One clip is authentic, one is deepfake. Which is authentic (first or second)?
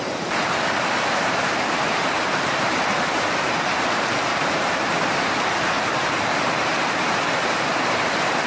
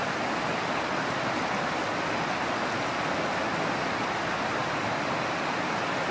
second